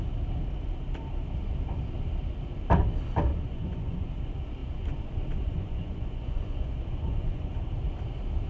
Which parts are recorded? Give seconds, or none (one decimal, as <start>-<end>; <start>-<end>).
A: 0.0-3.3; 4.1-4.6; 7.5-8.5